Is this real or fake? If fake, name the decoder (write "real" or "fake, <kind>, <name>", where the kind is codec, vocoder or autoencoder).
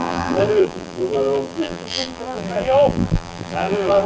fake, vocoder, BigVGAN v2